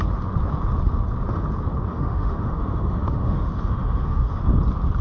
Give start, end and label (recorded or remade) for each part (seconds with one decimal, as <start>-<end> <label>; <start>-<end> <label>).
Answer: 0.0-1.9 recorded; 1.9-4.4 remade; 4.4-5.0 recorded